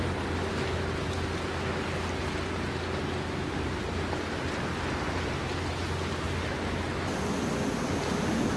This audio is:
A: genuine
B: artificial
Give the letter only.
A